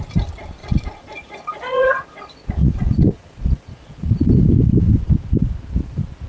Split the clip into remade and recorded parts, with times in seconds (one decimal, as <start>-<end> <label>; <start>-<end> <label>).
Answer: 0.0-0.6 recorded; 0.6-4.3 remade; 4.3-6.3 recorded

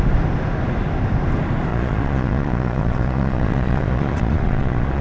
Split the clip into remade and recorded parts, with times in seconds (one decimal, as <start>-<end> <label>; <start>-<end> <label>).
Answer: 0.0-1.7 recorded; 1.7-5.0 remade

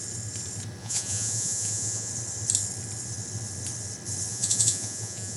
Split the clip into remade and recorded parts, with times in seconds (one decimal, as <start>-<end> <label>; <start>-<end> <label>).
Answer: 0.0-0.8 recorded; 0.8-2.1 remade; 2.1-4.3 recorded; 4.3-5.4 remade

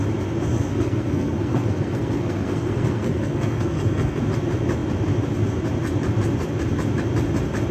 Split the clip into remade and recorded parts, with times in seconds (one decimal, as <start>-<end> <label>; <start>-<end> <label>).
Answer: 0.0-0.7 recorded; 0.7-4.2 remade; 4.2-7.7 recorded